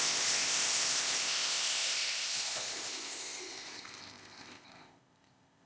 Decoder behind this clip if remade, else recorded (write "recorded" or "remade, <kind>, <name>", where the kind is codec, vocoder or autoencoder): remade, codec, ZipCodec